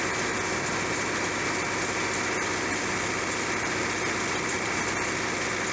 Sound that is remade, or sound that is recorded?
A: recorded